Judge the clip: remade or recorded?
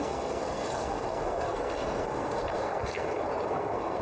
remade